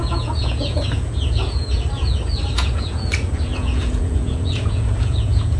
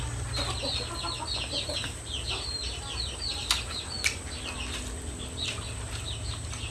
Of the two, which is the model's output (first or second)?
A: first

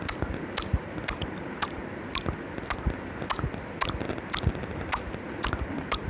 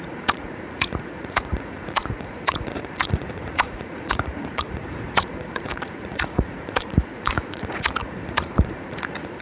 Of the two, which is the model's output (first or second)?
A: second